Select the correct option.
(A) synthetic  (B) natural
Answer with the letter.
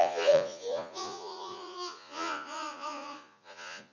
A